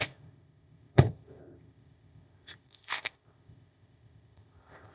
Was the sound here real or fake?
fake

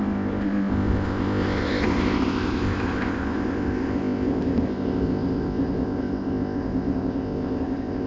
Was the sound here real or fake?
fake